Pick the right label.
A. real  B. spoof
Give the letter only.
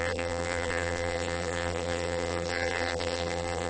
B